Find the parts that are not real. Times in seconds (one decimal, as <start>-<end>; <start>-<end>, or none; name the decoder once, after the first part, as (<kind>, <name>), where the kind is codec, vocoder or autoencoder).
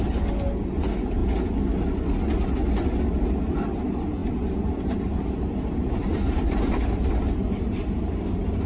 4.2-8.7 (vocoder, BigVGAN v2)